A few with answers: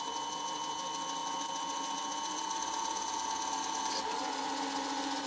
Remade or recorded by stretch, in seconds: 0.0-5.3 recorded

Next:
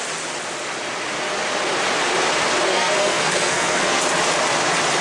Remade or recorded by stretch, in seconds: 0.0-2.7 recorded; 2.7-4.0 remade; 4.0-5.0 recorded